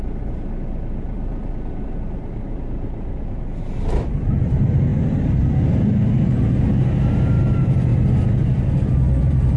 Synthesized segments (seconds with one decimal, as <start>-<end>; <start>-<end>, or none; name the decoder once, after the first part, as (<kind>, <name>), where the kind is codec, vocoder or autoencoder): 0.0-7.9 (vocoder, BigVGAN v2); 9.2-9.6